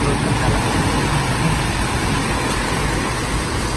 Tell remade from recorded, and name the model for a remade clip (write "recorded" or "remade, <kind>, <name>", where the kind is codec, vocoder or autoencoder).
recorded